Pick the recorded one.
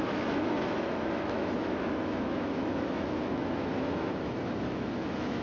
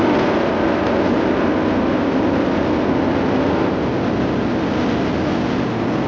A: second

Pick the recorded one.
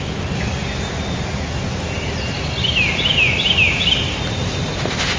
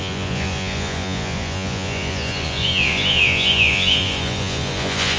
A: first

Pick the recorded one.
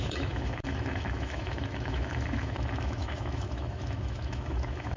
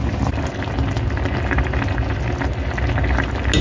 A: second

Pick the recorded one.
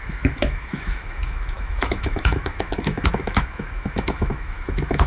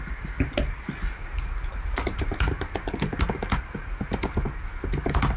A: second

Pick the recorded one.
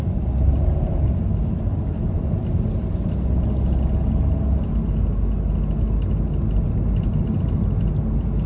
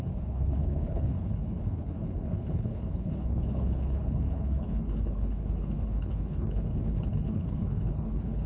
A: first